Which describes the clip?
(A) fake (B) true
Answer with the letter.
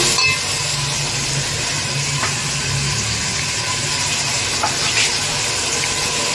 B